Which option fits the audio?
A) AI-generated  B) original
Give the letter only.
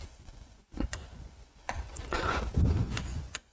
A